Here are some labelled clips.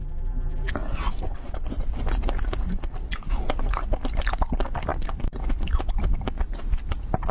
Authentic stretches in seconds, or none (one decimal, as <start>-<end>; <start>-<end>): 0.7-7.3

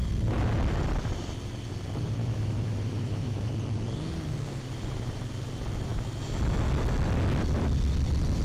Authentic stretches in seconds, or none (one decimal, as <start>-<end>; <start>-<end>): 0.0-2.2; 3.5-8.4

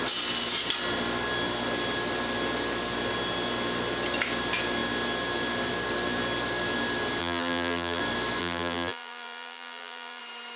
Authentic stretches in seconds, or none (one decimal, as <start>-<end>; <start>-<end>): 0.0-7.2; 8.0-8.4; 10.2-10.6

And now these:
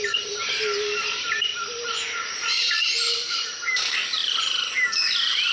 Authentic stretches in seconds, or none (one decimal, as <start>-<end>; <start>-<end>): 4.2-4.7

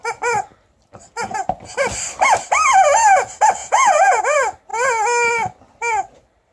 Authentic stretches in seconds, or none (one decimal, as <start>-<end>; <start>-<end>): 0.0-3.6; 4.2-6.5

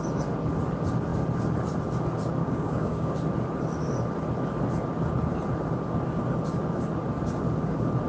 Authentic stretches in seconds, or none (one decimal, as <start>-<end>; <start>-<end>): 0.0-2.4; 3.1-8.1

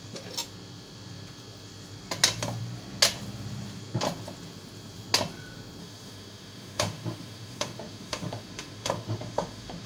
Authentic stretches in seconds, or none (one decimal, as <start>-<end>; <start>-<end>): 0.0-5.8